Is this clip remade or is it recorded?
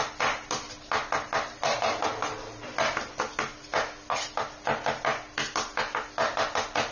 recorded